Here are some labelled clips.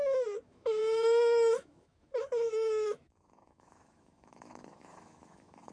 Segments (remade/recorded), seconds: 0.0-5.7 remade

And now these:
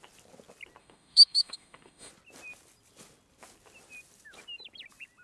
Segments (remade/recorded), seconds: 0.0-0.8 recorded; 0.8-2.1 remade; 2.1-5.2 recorded

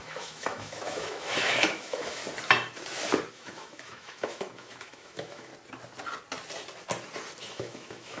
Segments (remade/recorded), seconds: 0.0-2.2 remade; 2.2-3.3 recorded; 3.3-5.5 remade; 5.5-7.4 recorded; 7.4-8.2 remade

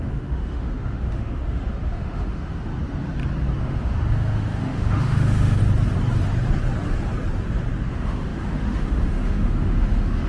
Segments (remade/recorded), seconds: 0.0-2.7 remade; 2.7-3.6 recorded; 3.6-5.6 remade; 5.6-7.9 recorded; 7.9-10.3 remade

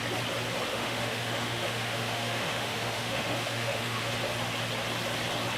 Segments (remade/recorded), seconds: 0.0-0.7 recorded; 0.7-4.1 remade; 4.1-5.6 recorded

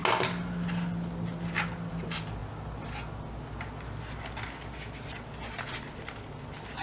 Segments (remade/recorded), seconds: 0.0-6.8 recorded

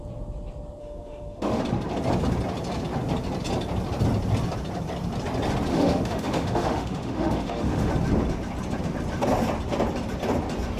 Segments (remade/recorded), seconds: 0.0-0.8 recorded; 0.8-1.6 remade; 1.6-5.7 recorded; 5.7-7.9 remade; 7.9-10.8 recorded